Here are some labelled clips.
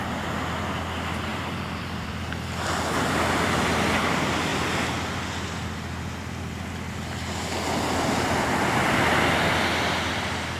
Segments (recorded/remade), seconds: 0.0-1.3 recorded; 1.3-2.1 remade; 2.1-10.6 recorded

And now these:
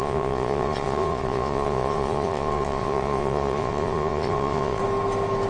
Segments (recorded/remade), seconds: 0.0-4.8 remade; 4.8-5.5 recorded